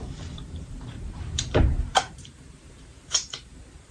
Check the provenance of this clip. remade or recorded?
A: remade